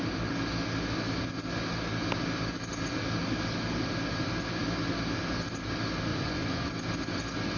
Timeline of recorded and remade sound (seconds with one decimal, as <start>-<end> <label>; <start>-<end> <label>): 0.0-6.1 recorded; 6.1-6.7 remade; 6.7-7.6 recorded